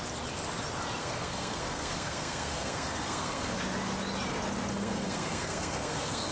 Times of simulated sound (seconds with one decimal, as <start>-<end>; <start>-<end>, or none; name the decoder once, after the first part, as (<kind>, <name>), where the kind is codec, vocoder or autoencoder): 1.0-3.6 (codec, SNAC); 4.7-6.3